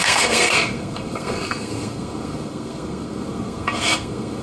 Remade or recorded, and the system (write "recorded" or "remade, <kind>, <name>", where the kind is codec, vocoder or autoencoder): remade, codec, SNAC